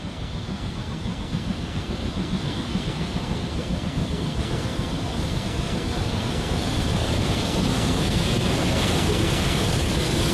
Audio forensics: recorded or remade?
remade